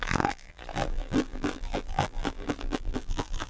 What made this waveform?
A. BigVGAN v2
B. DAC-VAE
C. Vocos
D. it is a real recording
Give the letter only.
A